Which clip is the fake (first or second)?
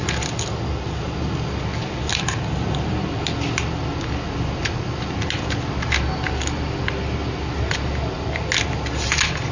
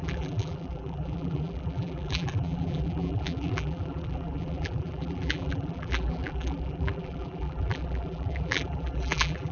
second